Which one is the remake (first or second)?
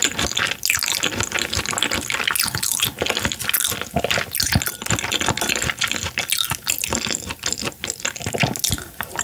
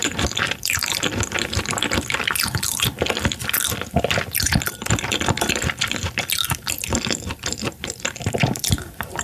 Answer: second